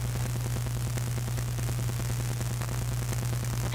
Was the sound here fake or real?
real